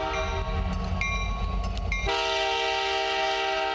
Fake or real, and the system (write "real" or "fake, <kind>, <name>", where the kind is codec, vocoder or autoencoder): real